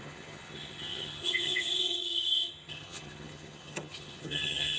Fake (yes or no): yes